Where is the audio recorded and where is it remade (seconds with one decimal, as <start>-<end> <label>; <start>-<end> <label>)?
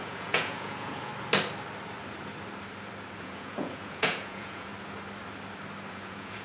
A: 0.0-1.1 remade; 1.1-3.2 recorded; 3.2-4.7 remade; 4.7-5.9 recorded; 5.9-6.4 remade